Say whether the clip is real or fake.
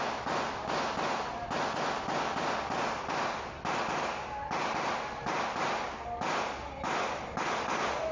real